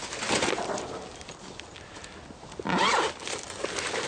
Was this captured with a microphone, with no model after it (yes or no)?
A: yes